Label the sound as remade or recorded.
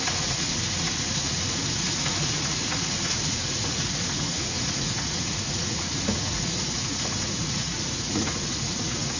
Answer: remade